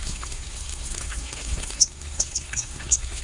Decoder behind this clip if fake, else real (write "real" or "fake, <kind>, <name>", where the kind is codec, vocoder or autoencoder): fake, codec, SNAC